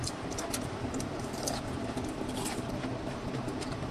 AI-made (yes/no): yes